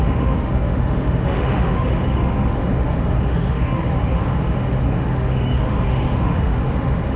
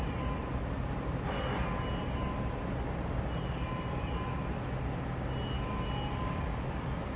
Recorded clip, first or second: second